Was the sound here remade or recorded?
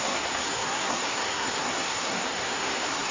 remade